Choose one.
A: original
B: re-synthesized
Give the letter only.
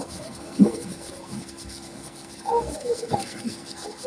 B